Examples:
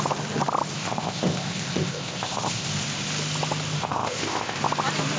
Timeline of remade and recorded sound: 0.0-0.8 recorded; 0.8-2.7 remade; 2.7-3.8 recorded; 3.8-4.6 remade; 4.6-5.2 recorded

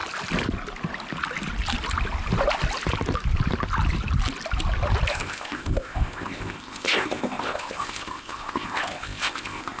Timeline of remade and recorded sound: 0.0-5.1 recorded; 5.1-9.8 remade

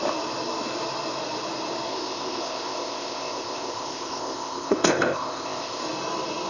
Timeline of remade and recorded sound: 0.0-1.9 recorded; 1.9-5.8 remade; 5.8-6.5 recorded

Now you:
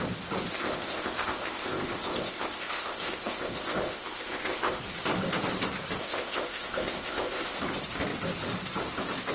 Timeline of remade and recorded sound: 0.0-0.5 recorded; 0.5-4.8 remade; 4.8-6.0 recorded; 6.0-7.6 remade; 7.6-9.3 recorded